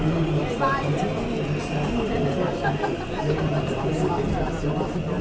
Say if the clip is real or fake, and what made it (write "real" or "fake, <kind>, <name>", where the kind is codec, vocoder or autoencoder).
real